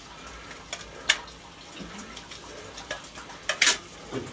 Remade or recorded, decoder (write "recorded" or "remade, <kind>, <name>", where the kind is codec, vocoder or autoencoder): recorded